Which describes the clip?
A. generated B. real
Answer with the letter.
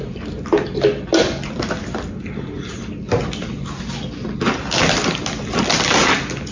B